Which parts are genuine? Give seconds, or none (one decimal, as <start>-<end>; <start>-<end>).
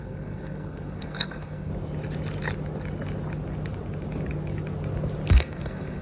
1.7-5.3